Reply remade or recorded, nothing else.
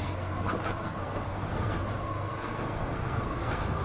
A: remade